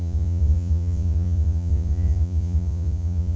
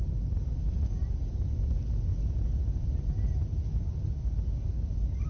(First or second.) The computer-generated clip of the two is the first